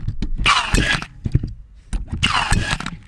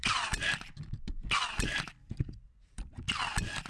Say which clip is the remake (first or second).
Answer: second